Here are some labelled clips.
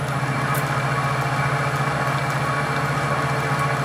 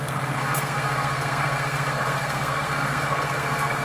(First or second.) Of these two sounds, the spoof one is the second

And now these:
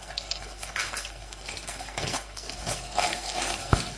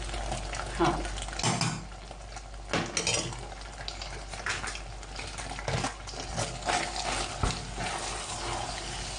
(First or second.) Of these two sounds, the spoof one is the first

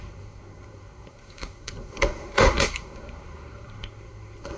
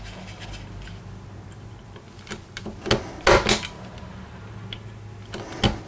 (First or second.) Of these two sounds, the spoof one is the first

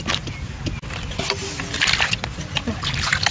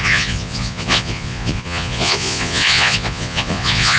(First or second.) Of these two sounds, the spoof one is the second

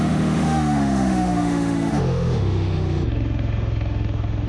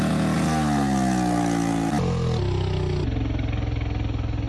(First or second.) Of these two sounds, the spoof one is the first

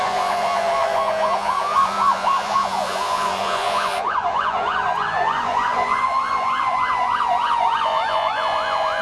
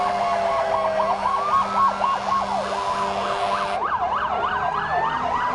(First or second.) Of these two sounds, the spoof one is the first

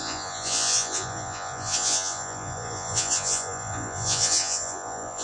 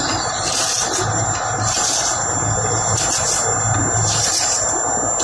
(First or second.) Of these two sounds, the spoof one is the first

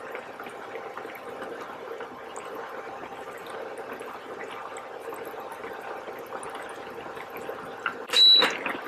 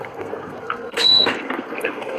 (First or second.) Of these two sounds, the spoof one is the second